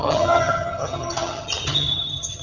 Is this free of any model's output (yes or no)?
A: no